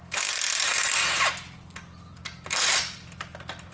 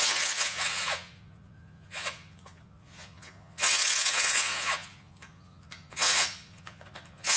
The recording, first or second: first